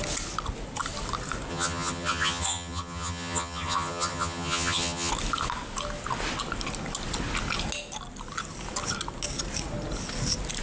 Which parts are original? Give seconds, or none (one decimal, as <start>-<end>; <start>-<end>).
0.0-1.5; 5.1-10.6